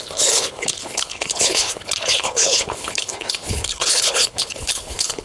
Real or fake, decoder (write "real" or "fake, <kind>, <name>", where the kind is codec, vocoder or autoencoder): fake, codec, HILCodec